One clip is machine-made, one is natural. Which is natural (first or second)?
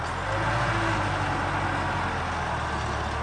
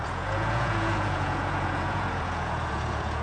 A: first